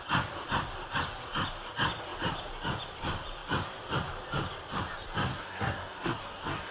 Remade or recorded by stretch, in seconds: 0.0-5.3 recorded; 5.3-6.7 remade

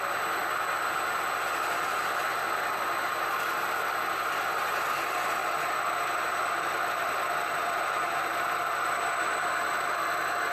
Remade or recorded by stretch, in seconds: 0.0-10.5 recorded

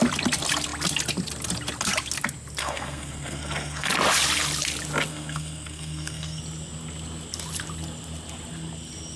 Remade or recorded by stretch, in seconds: 0.0-2.6 recorded; 2.6-3.9 remade; 3.9-5.1 recorded; 5.1-6.4 remade; 6.4-9.2 recorded

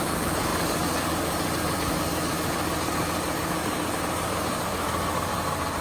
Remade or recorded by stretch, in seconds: 0.0-5.3 remade; 5.3-5.8 recorded

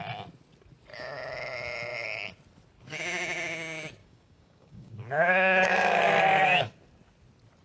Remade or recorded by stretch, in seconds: 0.0-4.0 recorded; 4.0-6.1 remade; 6.1-7.6 recorded

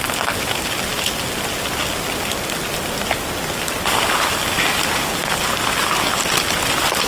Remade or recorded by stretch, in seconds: 0.0-7.1 recorded

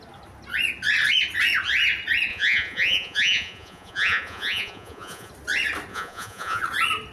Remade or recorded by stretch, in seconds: 0.0-2.3 recorded; 2.3-5.3 remade; 5.3-5.9 recorded; 5.9-6.6 remade; 6.6-7.1 recorded

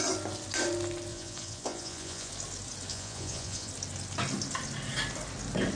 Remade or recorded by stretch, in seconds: 0.0-1.1 recorded; 1.1-2.3 remade; 2.3-2.9 recorded; 2.9-3.7 remade; 3.7-5.8 recorded